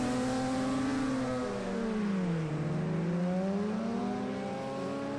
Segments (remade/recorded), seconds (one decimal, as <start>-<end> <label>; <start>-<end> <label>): 0.0-5.2 recorded